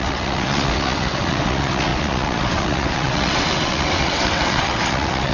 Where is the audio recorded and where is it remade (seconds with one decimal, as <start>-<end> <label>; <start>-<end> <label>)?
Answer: 0.0-5.3 remade